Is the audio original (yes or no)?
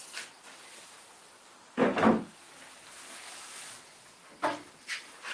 yes